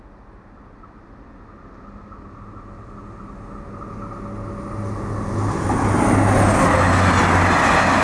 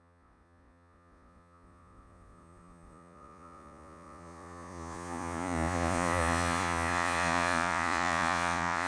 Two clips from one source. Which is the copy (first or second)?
second